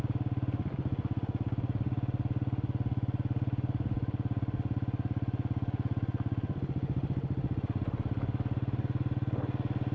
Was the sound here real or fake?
real